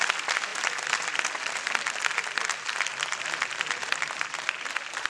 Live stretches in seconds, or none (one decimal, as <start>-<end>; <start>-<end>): 0.0-5.1